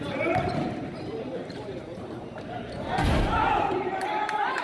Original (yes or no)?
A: no